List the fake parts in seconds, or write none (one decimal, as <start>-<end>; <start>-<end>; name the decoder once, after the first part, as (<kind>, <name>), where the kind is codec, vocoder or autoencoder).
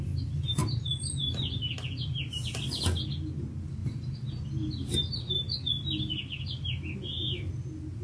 none